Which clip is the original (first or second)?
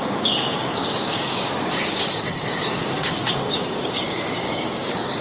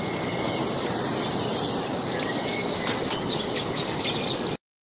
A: second